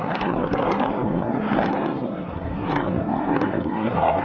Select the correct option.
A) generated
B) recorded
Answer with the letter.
A